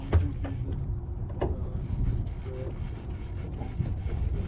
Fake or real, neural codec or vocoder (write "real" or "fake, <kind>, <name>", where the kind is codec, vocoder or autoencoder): real